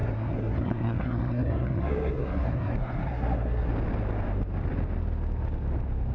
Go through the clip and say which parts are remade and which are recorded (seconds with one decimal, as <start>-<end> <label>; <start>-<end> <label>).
0.0-3.7 remade; 3.7-6.1 recorded